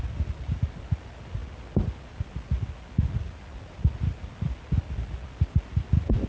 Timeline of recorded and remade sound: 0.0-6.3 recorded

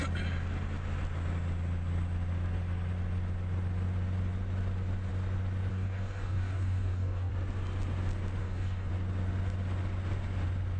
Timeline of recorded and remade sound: 0.0-5.7 recorded; 5.7-7.3 remade; 7.3-8.4 recorded; 8.4-8.9 remade; 8.9-10.8 recorded

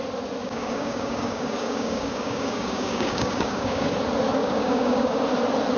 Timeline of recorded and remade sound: 0.0-0.4 recorded; 0.4-3.9 remade; 3.9-4.4 recorded; 4.4-5.2 remade; 5.2-5.8 recorded